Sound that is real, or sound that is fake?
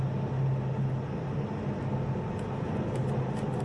real